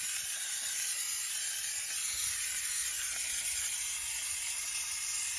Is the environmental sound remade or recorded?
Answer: recorded